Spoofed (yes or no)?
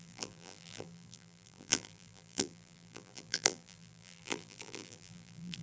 yes